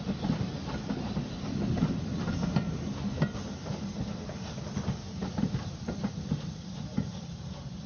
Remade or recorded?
recorded